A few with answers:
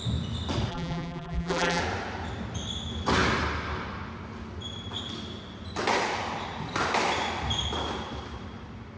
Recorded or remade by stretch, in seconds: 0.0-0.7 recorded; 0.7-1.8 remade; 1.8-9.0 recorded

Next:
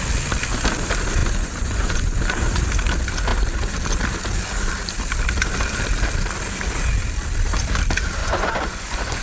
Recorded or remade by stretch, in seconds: 0.0-1.2 recorded; 1.2-2.2 remade; 2.2-8.2 recorded; 8.2-9.2 remade

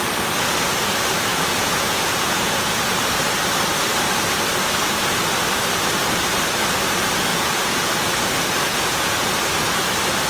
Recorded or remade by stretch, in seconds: 0.0-1.3 recorded; 1.3-2.9 remade; 2.9-7.3 recorded; 7.3-7.9 remade; 7.9-8.7 recorded; 8.7-9.3 remade; 9.3-10.3 recorded

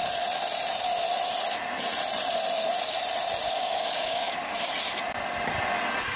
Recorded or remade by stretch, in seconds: 0.0-3.6 recorded; 3.6-4.7 remade; 4.7-6.2 recorded